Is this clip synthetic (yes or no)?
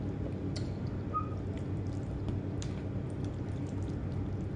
no